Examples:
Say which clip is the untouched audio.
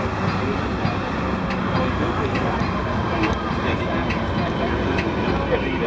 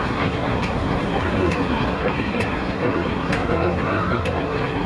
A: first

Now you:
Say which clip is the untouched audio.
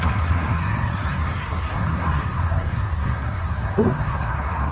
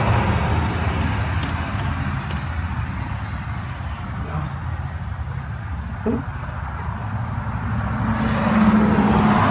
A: second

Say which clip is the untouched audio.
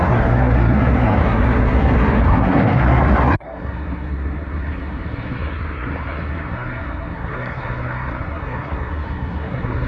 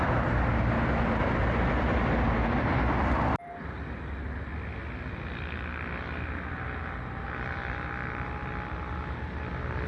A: second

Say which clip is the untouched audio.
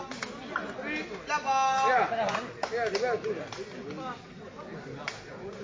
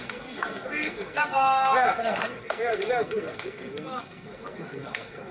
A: first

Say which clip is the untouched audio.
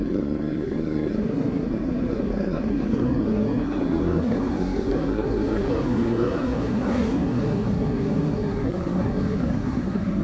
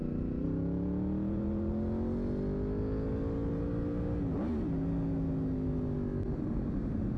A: second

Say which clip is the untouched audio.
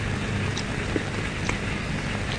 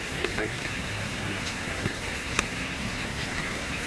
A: first